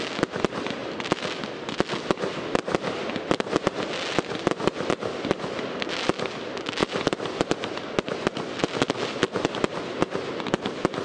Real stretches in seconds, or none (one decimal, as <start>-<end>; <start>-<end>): 0.0-6.8; 7.8-11.0